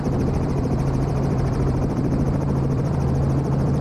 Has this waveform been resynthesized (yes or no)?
yes